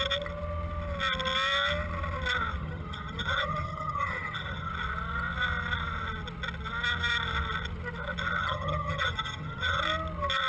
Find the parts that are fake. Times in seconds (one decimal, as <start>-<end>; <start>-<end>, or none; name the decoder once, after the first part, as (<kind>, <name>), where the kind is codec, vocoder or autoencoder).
2.6-4.7 (vocoder, HiFi-GAN); 8.4-9.8